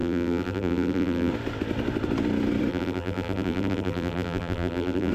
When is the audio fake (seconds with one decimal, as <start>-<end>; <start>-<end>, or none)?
0.0-1.3; 2.7-5.1